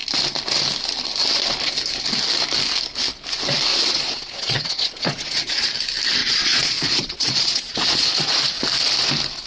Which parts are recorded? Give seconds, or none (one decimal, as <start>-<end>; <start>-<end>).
0.0-3.7; 5.7-6.2; 8.6-9.5